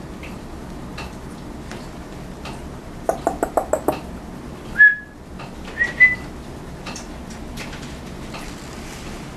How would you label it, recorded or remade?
recorded